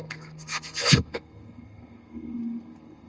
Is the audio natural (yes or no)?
no